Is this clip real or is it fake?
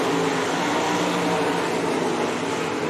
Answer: real